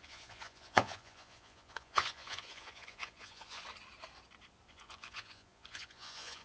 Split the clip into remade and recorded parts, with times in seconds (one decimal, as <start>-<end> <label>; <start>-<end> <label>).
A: 0.0-3.6 remade; 3.6-4.7 recorded; 4.7-6.4 remade